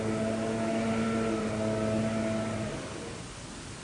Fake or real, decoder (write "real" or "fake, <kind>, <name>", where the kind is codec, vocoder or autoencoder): real